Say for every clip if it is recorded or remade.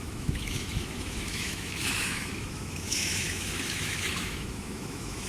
remade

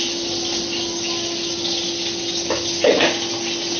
recorded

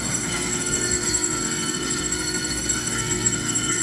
remade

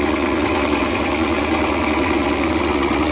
remade